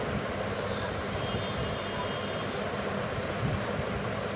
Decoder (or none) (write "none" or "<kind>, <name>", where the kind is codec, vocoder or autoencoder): none